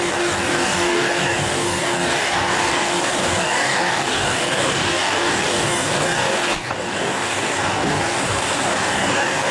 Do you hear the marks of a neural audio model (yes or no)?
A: yes